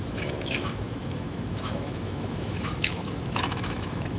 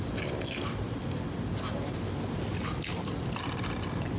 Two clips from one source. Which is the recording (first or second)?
second